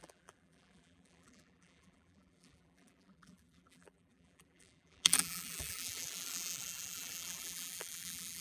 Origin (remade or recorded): remade